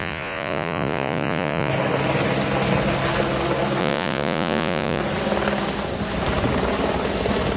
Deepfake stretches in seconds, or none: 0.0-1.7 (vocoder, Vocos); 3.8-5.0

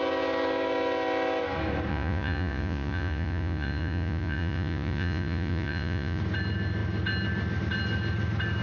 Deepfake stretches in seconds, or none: 1.9-6.2 (vocoder, Vocos)

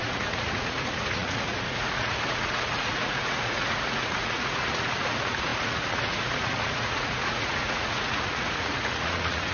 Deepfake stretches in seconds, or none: 0.0-9.5 (vocoder, Vocos)

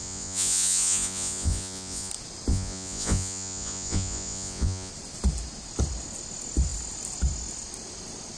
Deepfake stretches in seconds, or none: 0.0-2.1 (vocoder, Vocos); 2.5-4.9

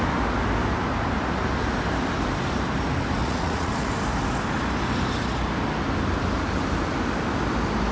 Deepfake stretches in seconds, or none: 3.2-3.9 (vocoder, Vocos)